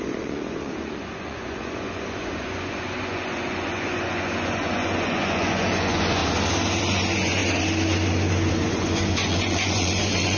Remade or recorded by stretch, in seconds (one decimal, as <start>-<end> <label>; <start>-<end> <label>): 0.0-6.2 remade; 6.2-6.8 recorded; 6.8-7.4 remade; 7.4-8.5 recorded; 8.5-10.4 remade

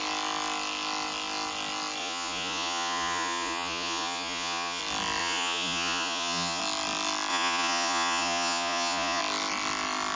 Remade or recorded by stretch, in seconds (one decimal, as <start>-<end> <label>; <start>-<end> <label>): 0.0-2.0 recorded; 2.0-4.8 remade; 4.8-5.2 recorded; 5.2-6.6 remade; 6.6-7.3 recorded; 7.3-9.2 remade; 9.2-10.1 recorded